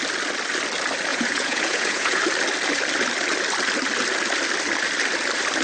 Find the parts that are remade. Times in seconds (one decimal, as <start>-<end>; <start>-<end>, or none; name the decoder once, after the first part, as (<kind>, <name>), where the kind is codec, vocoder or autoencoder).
1.1-2.2 (vocoder, Vocos)